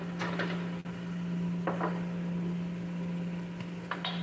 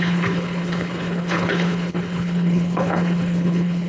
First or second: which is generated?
second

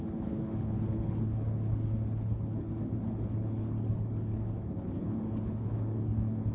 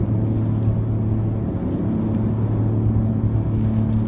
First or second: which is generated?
first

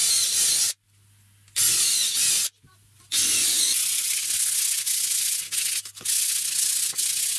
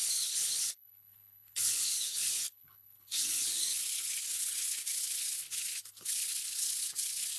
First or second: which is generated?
second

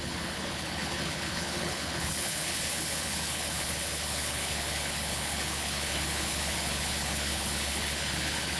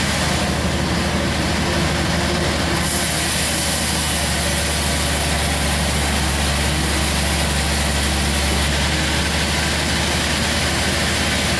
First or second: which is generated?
first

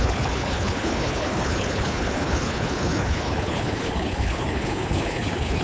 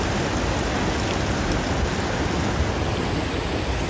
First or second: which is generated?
first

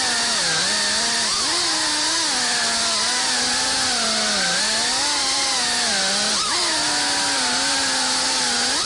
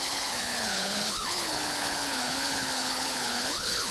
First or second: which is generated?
second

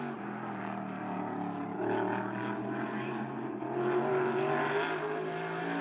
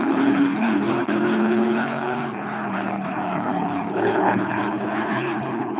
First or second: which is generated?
second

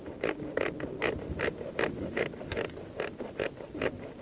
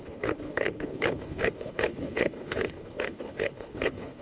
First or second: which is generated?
second